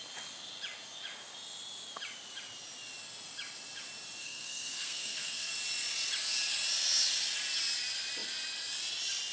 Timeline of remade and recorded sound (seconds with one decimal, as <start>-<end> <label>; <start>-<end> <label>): 0.0-4.2 recorded; 4.2-5.5 remade; 5.5-9.3 recorded